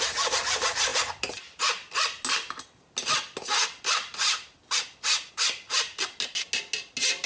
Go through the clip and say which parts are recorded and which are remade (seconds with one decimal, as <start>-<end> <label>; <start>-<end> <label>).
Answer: 0.0-7.3 recorded